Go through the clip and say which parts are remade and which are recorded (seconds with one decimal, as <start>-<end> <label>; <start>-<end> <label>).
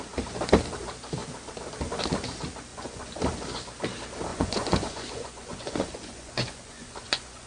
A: 0.0-2.7 recorded; 2.7-3.2 remade; 3.2-4.3 recorded; 4.3-7.5 remade